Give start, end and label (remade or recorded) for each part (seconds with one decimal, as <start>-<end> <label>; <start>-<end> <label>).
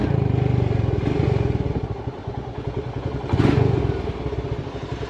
0.0-2.2 recorded; 2.2-3.8 remade; 3.8-5.1 recorded